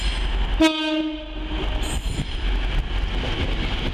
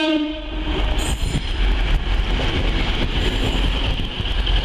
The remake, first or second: second